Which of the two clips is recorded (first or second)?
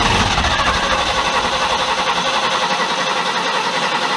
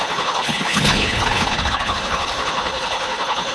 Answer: first